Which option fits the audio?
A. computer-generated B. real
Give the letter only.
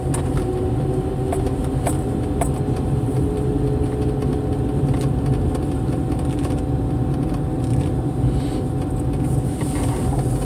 B